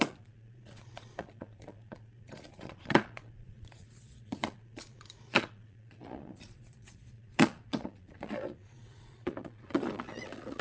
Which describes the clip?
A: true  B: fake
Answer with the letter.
B